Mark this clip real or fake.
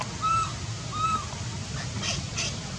real